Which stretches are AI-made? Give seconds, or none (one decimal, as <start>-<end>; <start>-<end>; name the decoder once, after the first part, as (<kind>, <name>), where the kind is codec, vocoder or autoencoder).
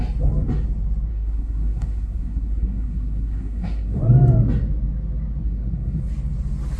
1.1-4.0 (codec, SNAC); 5.4-6.0